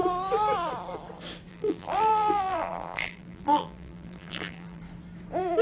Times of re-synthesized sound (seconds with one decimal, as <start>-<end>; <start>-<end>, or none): 1.5-4.8